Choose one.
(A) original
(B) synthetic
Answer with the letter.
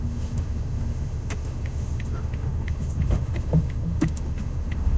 B